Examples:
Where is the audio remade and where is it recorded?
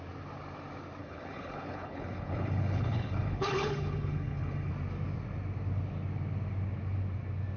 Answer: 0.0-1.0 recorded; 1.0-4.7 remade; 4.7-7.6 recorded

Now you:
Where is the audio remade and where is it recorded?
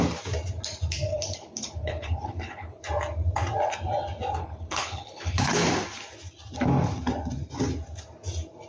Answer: 0.0-1.1 recorded; 1.1-2.8 remade; 2.8-4.4 recorded; 4.4-5.7 remade; 5.7-8.7 recorded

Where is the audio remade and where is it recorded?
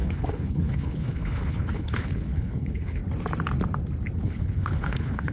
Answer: 0.0-3.0 remade; 3.0-4.2 recorded; 4.2-5.3 remade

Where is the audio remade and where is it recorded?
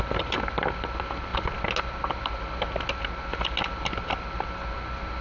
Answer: 0.0-5.2 recorded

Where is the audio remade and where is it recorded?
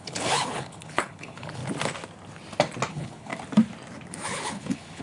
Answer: 0.0-1.6 remade; 1.6-2.9 recorded; 2.9-3.3 remade; 3.3-4.1 recorded; 4.1-5.0 remade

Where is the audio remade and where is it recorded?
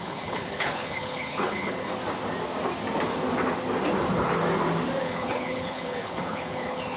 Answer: 0.0-1.9 remade; 1.9-5.0 recorded; 5.0-7.0 remade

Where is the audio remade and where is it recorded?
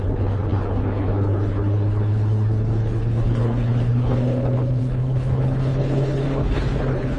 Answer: 0.0-7.2 remade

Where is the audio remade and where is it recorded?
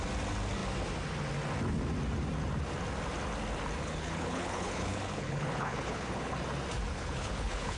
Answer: 0.0-3.8 recorded; 3.8-6.4 remade; 6.4-6.9 recorded; 6.9-7.8 remade